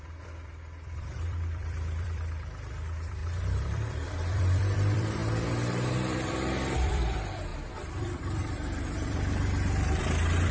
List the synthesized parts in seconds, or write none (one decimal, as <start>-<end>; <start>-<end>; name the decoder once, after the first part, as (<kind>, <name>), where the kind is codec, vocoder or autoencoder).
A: 0.0-5.2 (vocoder, BigVGAN v2); 5.9-10.5